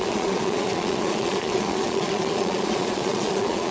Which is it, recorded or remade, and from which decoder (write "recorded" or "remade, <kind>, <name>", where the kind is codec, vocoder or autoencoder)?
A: remade, vocoder, Vocos